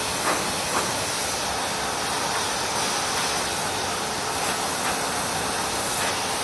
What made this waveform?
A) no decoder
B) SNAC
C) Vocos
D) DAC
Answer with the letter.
A